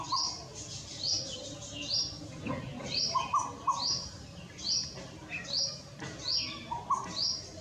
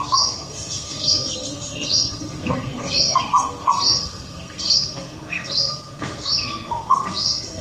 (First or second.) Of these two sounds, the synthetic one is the second